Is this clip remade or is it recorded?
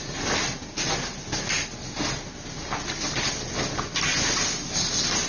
recorded